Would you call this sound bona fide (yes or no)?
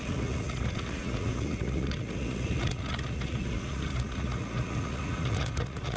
no